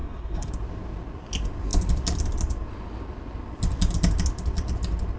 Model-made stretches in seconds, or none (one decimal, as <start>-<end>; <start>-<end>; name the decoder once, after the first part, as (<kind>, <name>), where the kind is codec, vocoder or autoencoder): 0.0-0.5 (codec, SNAC)